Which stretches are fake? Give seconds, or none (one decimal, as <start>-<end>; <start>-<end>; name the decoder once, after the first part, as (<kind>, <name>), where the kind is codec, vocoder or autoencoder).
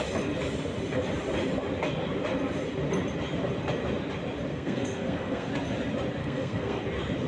4.5-5.5 (codec, SNAC); 6.2-6.8